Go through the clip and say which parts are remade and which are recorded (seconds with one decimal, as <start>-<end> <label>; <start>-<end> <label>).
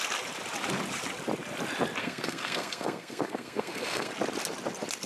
0.0-2.0 recorded; 2.0-4.1 remade; 4.1-5.1 recorded